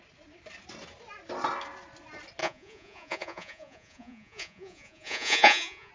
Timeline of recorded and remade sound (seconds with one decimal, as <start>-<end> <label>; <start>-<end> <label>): 0.0-2.4 recorded; 2.4-5.9 remade